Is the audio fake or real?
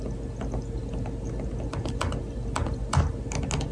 real